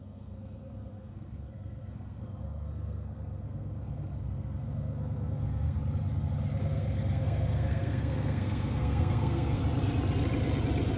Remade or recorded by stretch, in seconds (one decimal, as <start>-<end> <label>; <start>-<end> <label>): 0.0-5.8 remade; 5.8-6.6 recorded; 6.6-9.6 remade; 9.6-11.0 recorded